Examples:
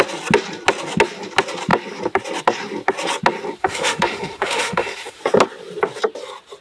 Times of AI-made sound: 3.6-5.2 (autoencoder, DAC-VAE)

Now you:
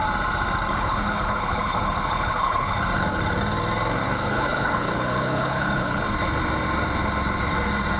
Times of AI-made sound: 0.7-2.8 (codec, HILCodec); 4.0-6.0

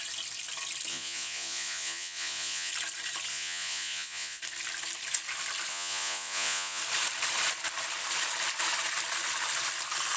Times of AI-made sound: 0.9-2.7 (vocoder, Vocos); 3.3-4.4; 5.7-6.8

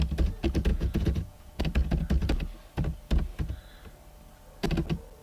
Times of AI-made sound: 0.7-1.6 (vocoder, Vocos)

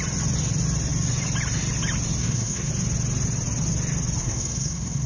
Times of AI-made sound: 2.2-2.7 (codec, SNAC); 4.2-5.1